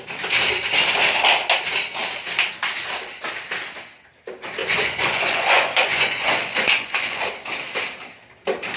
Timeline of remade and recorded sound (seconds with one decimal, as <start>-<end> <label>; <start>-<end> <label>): 0.0-4.6 recorded; 4.6-7.3 remade; 7.3-8.8 recorded